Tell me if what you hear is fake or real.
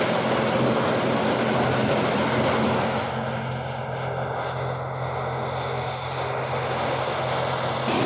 real